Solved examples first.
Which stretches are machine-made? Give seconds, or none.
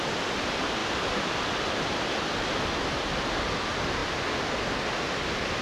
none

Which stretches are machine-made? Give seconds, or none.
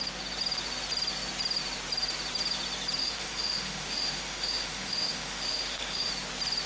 3.0-6.1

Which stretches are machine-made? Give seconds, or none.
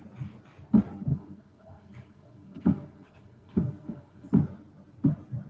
1.1-4.3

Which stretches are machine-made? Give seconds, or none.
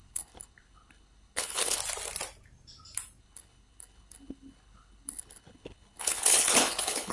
0.0-1.8; 3.2-7.1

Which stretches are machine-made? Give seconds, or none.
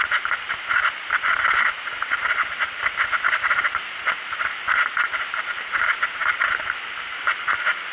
none